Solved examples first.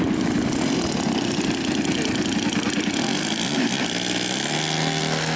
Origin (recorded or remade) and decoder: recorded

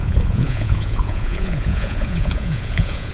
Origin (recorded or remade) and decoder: remade, vocoder, Vocos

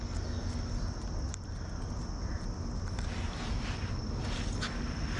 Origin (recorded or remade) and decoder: recorded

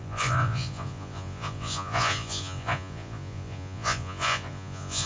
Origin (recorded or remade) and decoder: remade, vocoder, Vocos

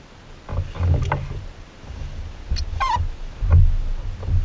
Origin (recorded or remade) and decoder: recorded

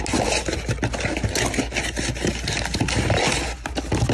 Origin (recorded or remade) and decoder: recorded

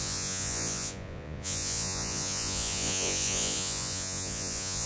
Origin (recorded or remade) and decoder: remade, vocoder, Vocos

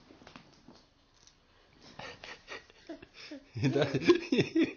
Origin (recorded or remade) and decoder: recorded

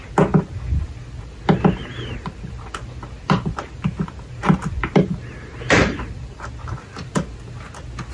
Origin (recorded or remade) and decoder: recorded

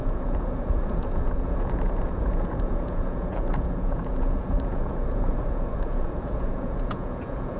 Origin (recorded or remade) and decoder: remade, vocoder, Vocos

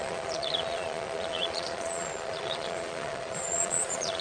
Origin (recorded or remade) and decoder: remade, vocoder, Vocos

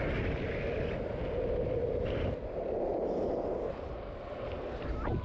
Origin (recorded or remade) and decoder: recorded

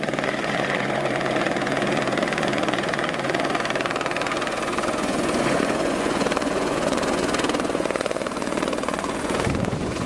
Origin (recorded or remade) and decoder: remade, vocoder, Vocos